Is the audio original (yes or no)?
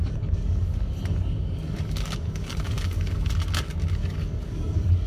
no